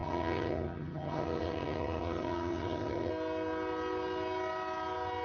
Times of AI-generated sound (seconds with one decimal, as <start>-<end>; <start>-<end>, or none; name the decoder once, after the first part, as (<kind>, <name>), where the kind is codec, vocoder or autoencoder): 0.0-3.1 (vocoder, HiFi-GAN)